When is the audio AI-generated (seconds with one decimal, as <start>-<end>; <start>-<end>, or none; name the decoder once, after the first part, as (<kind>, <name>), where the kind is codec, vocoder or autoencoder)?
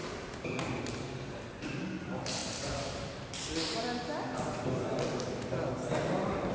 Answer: none